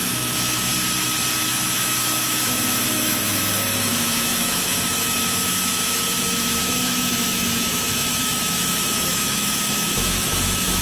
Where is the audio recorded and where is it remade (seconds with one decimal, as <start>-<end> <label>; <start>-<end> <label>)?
0.0-0.7 remade; 0.7-1.5 recorded; 1.5-10.8 remade